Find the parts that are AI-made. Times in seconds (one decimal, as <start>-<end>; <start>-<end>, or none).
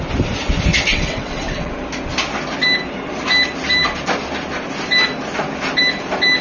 0.9-1.7